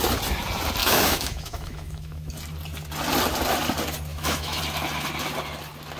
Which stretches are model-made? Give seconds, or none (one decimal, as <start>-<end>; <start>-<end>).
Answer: 0.8-2.3; 4.1-4.6